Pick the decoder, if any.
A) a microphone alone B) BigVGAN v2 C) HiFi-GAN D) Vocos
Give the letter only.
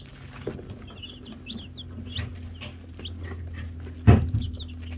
A